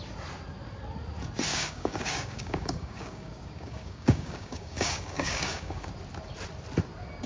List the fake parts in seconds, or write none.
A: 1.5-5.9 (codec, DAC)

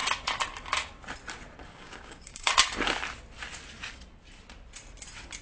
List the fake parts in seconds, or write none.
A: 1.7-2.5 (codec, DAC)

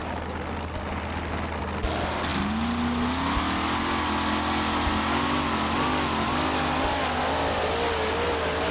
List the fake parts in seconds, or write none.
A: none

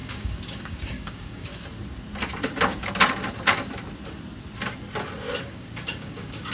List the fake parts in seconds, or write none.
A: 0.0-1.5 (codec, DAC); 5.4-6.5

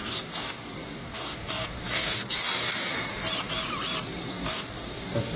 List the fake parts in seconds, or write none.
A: 0.0-3.2 (codec, DAC); 4.3-5.4

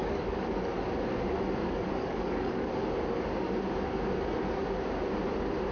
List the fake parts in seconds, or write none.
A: 0.0-0.9 (codec, DAC); 1.6-3.0

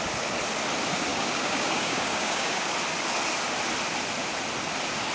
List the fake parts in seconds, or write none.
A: 1.1-2.7 (codec, DAC)

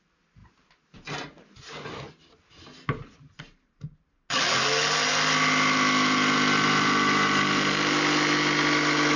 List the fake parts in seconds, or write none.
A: none